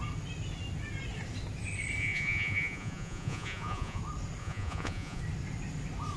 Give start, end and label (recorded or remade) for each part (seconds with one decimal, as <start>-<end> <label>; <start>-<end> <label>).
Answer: 0.0-2.0 recorded; 2.0-4.0 remade; 4.0-4.4 recorded; 4.4-5.2 remade; 5.2-6.2 recorded